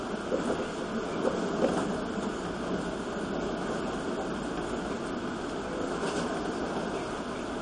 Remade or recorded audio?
recorded